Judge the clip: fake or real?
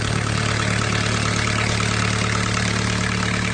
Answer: real